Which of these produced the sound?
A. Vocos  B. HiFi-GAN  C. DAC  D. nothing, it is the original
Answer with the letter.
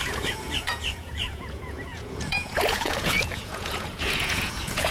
A